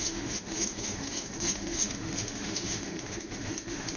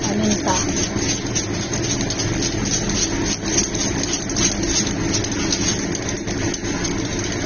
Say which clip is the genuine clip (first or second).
second